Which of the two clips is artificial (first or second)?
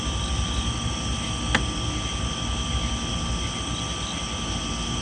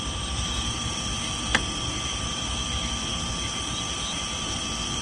second